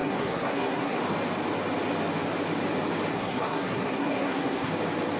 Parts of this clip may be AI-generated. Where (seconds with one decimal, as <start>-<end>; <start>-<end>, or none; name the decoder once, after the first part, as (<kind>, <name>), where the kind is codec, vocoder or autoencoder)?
0.0-1.0 (codec, SNAC); 3.1-4.7